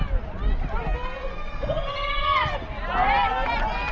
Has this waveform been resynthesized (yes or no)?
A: no